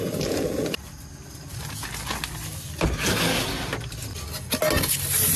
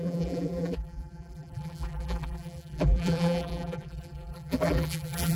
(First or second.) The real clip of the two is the first